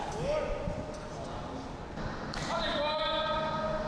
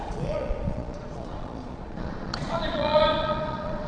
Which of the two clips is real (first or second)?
first